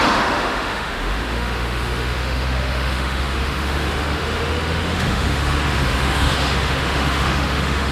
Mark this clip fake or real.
fake